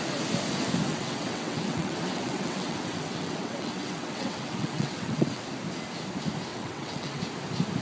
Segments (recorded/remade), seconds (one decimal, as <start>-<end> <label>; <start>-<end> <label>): 0.0-0.9 recorded; 0.9-5.4 remade; 5.4-6.5 recorded; 6.5-7.2 remade; 7.2-7.8 recorded